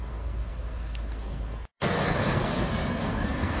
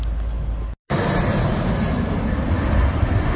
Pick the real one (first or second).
second